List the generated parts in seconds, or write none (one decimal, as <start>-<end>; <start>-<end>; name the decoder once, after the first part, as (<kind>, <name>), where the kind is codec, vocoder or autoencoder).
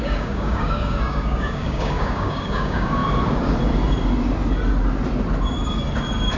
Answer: 0.0-3.0 (codec, DAC)